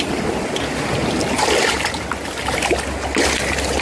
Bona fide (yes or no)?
yes